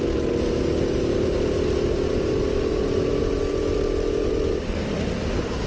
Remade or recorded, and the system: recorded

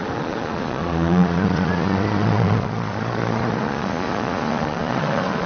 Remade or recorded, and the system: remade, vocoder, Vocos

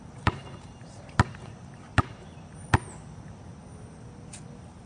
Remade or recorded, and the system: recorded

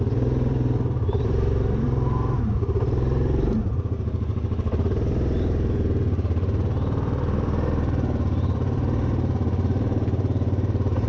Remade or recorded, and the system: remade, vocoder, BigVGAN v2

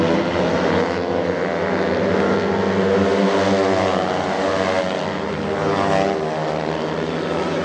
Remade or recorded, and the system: recorded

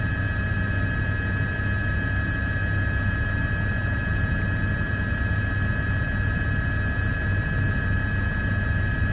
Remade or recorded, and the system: recorded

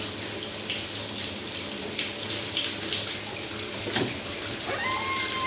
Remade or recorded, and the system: recorded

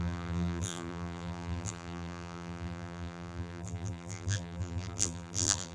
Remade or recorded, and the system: remade, vocoder, BigVGAN v2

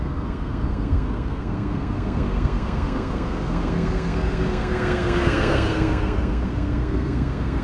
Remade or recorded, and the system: remade, codec, SNAC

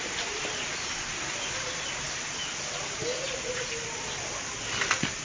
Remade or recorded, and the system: remade, vocoder, BigVGAN v2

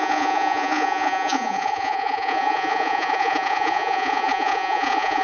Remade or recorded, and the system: remade, vocoder, Vocos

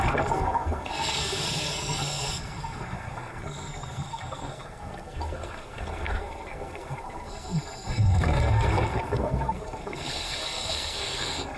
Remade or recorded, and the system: remade, codec, SNAC